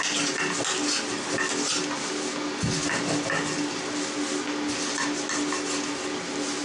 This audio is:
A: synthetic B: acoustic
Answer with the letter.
B